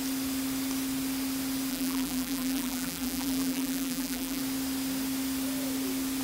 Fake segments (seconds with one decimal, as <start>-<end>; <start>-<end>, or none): 1.7-4.4